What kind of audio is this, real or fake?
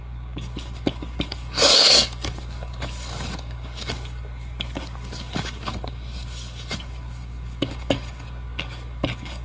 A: fake